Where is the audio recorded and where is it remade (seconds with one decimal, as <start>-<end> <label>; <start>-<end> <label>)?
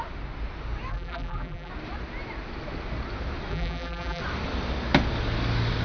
0.0-0.9 recorded; 0.9-1.7 remade; 1.7-3.5 recorded; 3.5-4.2 remade; 4.2-5.8 recorded